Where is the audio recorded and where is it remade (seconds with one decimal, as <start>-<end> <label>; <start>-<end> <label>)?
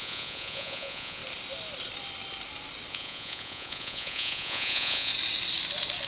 0.0-1.2 remade; 1.2-2.9 recorded; 2.9-5.1 remade; 5.1-6.1 recorded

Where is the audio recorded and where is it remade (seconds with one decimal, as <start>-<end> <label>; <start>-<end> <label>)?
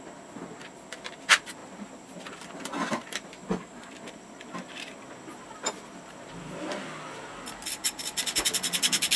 0.0-1.6 recorded; 1.6-6.8 remade; 6.8-9.2 recorded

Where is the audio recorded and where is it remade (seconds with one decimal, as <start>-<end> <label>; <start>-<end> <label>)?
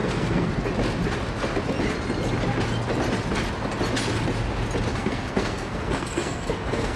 0.0-0.5 remade; 0.5-4.9 recorded; 4.9-7.0 remade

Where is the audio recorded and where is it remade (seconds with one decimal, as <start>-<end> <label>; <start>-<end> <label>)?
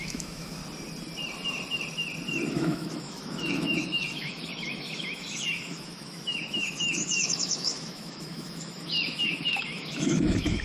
0.0-0.6 remade; 0.6-2.5 recorded; 2.5-10.6 remade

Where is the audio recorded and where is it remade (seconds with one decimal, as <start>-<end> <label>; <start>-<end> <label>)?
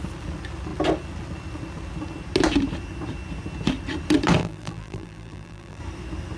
0.0-4.4 recorded; 4.4-5.8 remade; 5.8-6.4 recorded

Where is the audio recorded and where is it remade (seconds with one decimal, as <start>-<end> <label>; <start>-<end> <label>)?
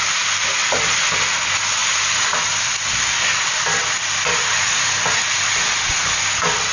0.0-6.7 recorded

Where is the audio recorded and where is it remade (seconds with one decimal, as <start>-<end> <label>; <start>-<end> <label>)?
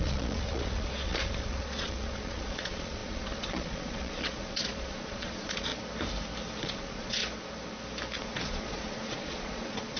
0.0-5.7 remade; 5.7-6.6 recorded; 6.6-7.2 remade; 7.2-8.2 recorded; 8.2-10.0 remade